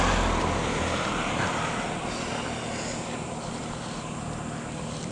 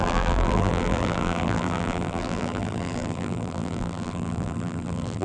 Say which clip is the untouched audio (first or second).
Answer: first